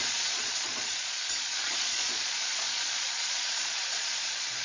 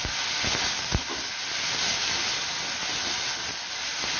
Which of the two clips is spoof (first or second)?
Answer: first